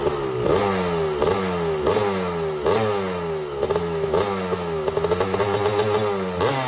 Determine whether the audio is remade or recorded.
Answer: recorded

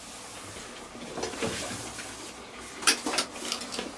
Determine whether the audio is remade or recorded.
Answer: recorded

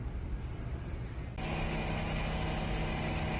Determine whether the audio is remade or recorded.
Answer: recorded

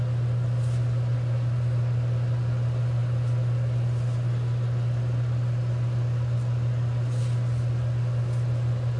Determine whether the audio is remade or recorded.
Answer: recorded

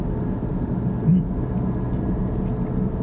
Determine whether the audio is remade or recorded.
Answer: recorded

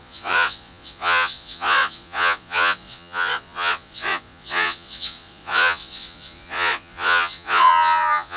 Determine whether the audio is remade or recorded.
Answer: remade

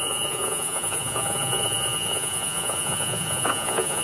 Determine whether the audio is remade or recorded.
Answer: remade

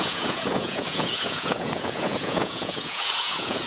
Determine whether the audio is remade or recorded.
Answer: remade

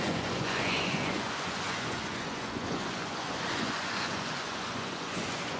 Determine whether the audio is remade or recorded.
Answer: remade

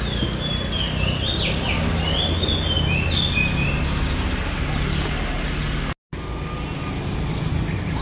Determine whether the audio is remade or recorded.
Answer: recorded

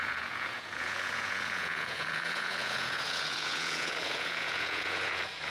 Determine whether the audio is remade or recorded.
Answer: remade